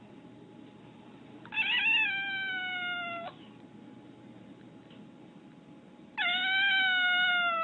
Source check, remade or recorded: recorded